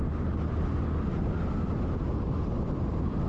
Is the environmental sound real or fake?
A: real